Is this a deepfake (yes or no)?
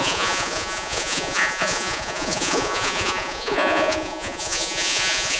yes